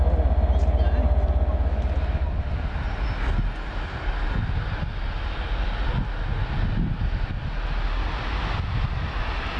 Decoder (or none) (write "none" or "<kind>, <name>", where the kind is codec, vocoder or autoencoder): none